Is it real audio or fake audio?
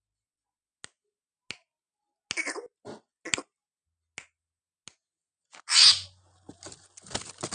real